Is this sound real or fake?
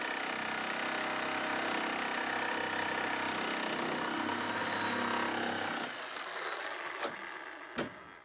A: real